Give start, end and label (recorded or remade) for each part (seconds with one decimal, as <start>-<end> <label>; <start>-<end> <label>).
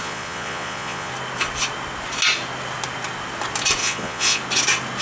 0.0-1.1 remade; 1.1-3.8 recorded; 3.8-4.4 remade; 4.4-5.0 recorded